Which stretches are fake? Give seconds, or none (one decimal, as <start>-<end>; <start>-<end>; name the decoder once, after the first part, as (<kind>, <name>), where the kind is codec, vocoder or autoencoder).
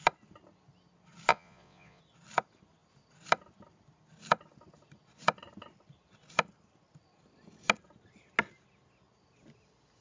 1.3-2.0 (vocoder, Vocos)